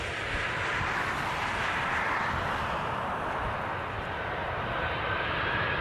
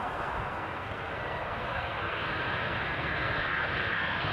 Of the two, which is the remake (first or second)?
second